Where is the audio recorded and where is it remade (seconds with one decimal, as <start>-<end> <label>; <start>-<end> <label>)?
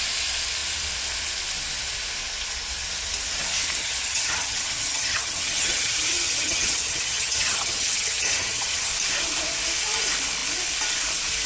0.0-3.8 recorded; 3.8-8.9 remade; 8.9-11.5 recorded